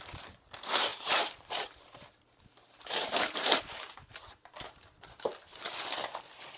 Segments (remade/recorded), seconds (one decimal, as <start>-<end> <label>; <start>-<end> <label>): 0.0-0.9 recorded; 0.9-4.9 remade; 4.9-6.6 recorded